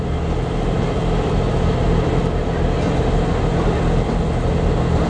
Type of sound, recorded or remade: recorded